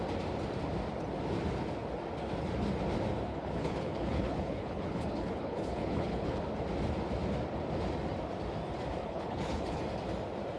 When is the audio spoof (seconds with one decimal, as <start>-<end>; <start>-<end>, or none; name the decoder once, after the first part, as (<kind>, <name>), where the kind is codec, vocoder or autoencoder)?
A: 3.3-6.4 (codec, HILCodec); 9.0-9.8